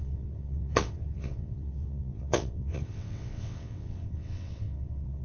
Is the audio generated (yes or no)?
yes